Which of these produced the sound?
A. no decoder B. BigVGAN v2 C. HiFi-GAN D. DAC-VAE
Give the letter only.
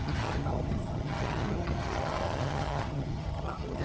C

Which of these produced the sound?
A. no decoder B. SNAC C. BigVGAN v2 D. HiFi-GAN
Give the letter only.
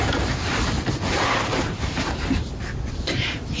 A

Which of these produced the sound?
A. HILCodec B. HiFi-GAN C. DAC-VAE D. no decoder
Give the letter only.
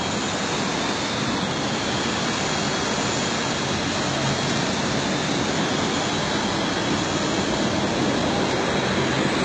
D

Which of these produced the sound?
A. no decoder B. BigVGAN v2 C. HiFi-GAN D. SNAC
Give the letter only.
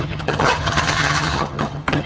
C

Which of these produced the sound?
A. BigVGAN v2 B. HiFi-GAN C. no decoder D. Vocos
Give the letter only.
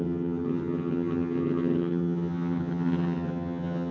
B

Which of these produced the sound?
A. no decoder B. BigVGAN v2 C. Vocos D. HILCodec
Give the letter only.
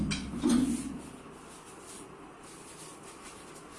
A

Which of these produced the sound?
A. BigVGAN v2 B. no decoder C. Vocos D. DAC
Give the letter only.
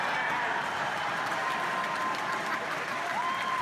B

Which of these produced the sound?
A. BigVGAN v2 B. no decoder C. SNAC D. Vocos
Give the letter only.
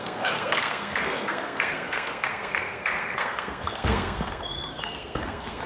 C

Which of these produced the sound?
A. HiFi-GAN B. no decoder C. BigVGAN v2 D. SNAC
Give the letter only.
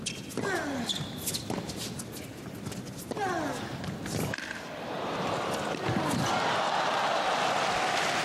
B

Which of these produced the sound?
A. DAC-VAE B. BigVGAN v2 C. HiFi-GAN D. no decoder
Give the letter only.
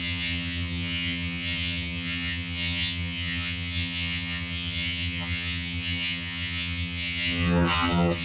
C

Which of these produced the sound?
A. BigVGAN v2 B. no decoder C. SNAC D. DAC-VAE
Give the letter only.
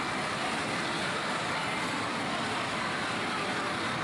B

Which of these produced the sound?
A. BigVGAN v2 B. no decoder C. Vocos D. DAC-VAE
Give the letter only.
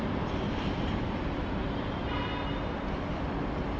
B